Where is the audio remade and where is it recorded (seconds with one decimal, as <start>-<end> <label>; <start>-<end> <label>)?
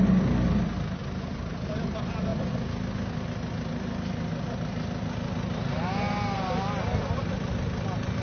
0.0-1.0 recorded; 1.0-1.7 remade; 1.7-8.2 recorded